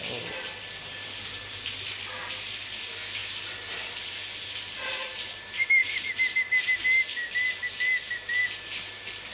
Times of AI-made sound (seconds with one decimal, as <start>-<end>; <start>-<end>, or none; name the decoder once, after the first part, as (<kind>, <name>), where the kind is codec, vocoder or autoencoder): none